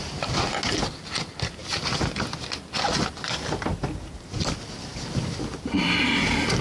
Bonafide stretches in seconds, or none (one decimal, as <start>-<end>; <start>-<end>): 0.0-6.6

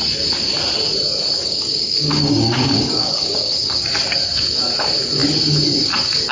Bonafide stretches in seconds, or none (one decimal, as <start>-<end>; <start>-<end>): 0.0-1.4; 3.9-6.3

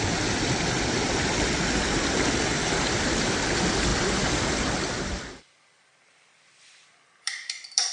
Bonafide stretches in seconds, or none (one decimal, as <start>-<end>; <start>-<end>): none

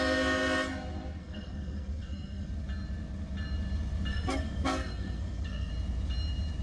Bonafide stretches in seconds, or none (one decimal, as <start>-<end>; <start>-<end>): 0.0-1.2; 2.5-4.1; 5.7-6.6

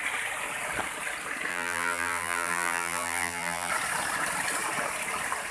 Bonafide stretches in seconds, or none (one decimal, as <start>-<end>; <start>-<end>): 0.0-1.5; 3.7-5.5